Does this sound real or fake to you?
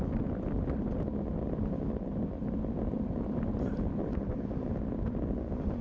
real